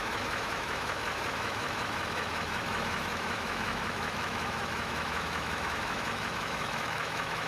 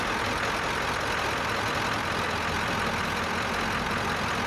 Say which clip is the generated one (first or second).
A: first